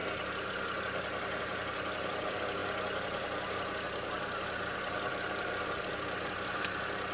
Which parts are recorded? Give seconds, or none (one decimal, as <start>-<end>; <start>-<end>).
0.0-7.1

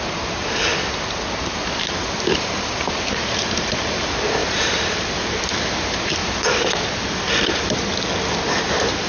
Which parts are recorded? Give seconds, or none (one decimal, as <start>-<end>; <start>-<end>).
0.7-1.8; 4.4-5.0; 6.2-8.7

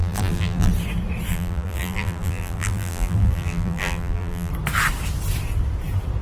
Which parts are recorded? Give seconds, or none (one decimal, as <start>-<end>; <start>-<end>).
0.7-1.3; 4.5-6.2

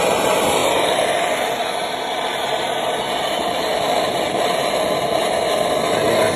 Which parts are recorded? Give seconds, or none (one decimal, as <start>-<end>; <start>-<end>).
0.0-3.7; 4.4-6.4

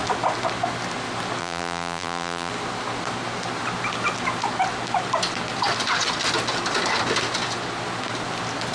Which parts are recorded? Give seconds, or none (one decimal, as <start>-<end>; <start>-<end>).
0.0-1.4; 2.5-8.7

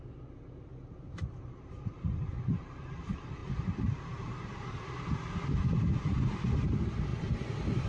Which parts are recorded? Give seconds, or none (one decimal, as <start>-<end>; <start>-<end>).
0.0-0.7; 1.7-7.1

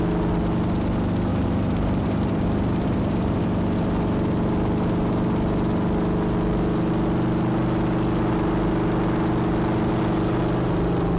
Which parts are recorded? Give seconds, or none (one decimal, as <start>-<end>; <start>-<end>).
0.0-1.3; 3.4-11.2